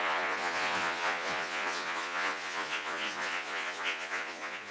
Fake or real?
fake